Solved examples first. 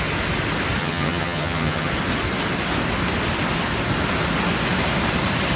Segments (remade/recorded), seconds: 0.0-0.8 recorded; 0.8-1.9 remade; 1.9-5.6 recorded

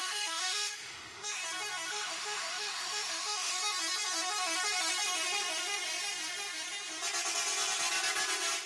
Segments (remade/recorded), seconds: 0.0-1.4 remade; 1.4-1.9 recorded; 1.9-3.6 remade; 3.6-8.7 recorded

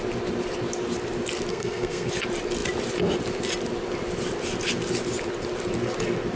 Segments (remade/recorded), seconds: 0.0-1.5 recorded; 1.5-2.1 remade; 2.1-6.4 recorded